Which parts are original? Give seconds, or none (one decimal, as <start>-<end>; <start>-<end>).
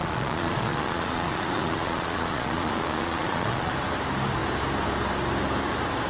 3.7-6.1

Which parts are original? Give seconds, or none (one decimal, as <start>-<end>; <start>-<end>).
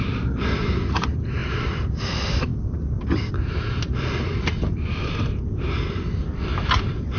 0.0-1.4; 2.0-2.5; 3.3-7.2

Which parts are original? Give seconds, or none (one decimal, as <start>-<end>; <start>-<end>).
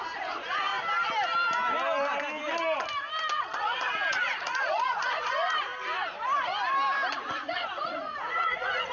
0.7-3.4; 5.7-7.2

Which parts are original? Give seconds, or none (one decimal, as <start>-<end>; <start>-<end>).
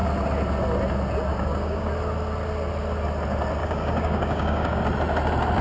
0.0-1.3; 1.9-3.6; 4.8-5.6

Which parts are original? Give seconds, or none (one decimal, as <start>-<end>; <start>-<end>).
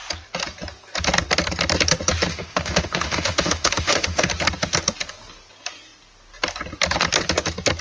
0.0-2.3; 4.3-7.8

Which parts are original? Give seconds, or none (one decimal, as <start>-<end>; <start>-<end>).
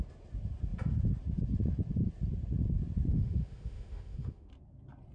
0.0-3.1; 4.5-5.1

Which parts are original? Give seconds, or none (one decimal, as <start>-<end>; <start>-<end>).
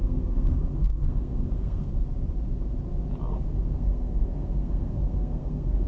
1.9-3.3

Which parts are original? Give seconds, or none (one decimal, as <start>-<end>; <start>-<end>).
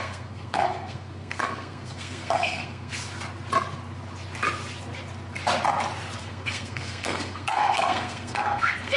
2.9-6.2